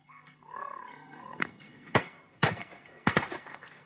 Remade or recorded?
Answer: remade